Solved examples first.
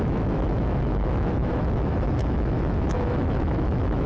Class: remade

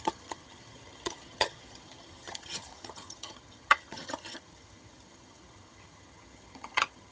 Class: remade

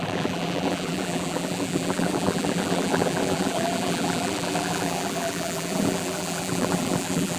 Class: remade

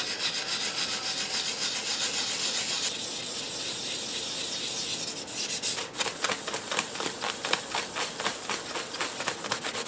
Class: recorded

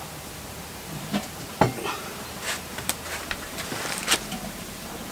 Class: remade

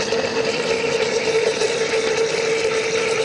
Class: recorded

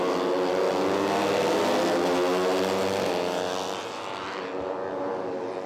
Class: recorded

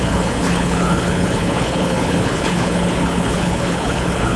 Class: remade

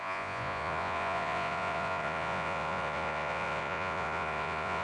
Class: remade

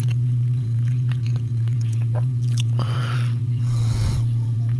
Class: remade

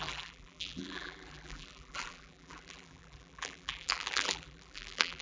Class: remade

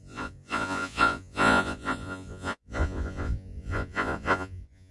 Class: remade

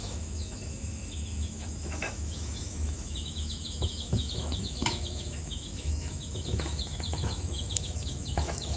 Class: remade